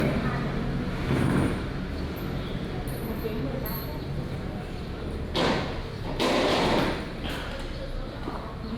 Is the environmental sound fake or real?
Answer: real